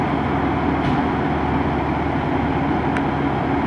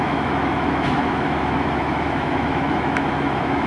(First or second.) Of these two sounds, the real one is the first